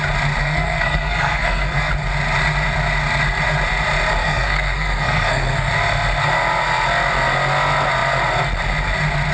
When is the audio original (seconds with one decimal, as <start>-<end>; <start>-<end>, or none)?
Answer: 0.0-0.4; 1.9-4.2; 5.7-9.3